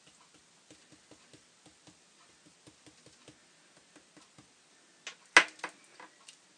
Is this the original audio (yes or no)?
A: yes